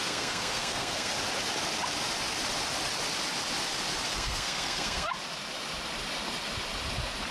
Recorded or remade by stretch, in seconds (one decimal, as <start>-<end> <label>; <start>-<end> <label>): 0.0-1.1 remade; 1.1-4.1 recorded; 4.1-5.1 remade; 5.1-7.3 recorded